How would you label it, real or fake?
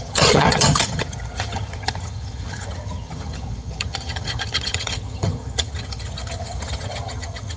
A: fake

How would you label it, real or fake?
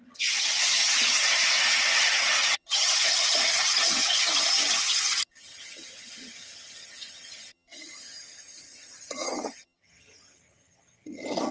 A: fake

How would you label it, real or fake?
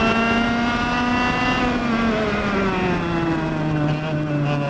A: real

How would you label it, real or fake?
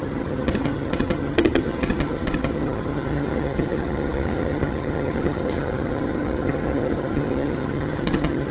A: fake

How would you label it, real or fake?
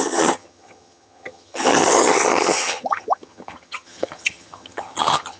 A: fake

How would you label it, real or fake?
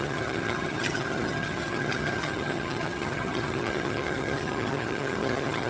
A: fake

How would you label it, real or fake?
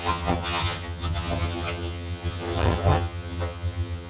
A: fake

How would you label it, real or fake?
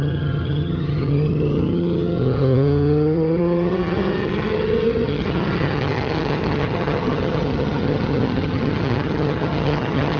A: fake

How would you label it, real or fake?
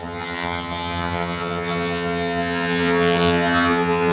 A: fake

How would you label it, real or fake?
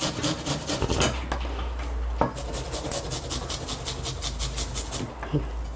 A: real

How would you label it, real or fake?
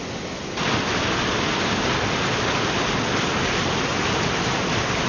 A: real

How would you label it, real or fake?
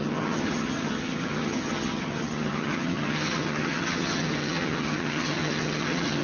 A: fake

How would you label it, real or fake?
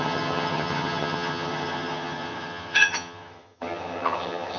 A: fake